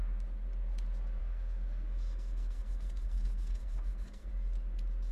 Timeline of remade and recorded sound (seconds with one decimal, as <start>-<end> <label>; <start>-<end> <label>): 0.0-1.2 recorded; 1.2-4.3 remade; 4.3-5.1 recorded